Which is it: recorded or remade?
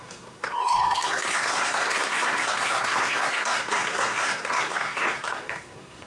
remade